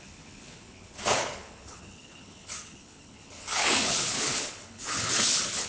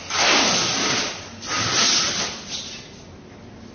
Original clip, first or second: second